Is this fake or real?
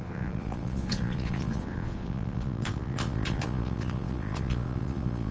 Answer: fake